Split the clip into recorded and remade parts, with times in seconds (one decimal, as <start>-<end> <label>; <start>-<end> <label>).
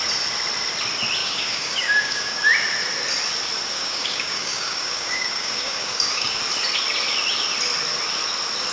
0.0-1.2 recorded; 1.2-2.4 remade; 2.4-3.7 recorded; 3.7-6.4 remade; 6.4-8.7 recorded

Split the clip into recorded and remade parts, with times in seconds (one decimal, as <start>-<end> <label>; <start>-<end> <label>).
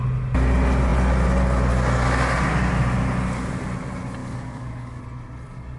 0.0-4.2 recorded; 4.2-5.0 remade; 5.0-5.8 recorded